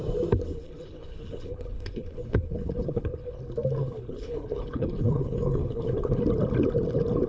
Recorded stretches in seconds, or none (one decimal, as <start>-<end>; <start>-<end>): 0.0-0.4; 3.4-3.8; 6.2-7.3